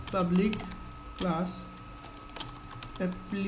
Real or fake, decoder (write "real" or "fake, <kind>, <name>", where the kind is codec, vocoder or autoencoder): real